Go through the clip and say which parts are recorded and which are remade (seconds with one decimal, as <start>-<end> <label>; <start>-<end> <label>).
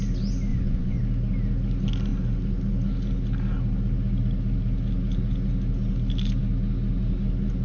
0.0-0.5 recorded; 0.5-1.0 remade; 1.0-7.6 recorded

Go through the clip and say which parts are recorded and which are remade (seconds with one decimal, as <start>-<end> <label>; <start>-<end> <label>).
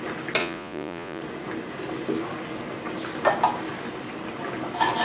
0.0-0.4 recorded; 0.4-1.2 remade; 1.2-5.0 recorded